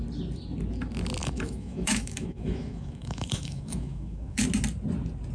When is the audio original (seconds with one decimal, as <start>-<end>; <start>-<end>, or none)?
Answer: 0.0-1.2; 4.4-5.3